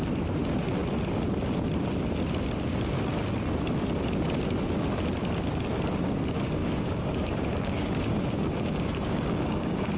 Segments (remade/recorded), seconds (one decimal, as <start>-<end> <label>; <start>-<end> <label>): 0.0-6.6 recorded; 6.6-10.0 remade